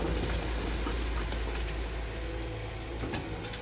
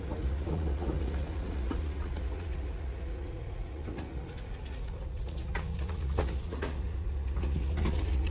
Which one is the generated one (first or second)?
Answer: second